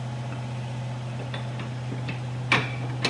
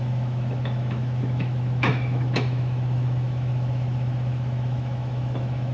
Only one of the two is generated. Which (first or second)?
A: second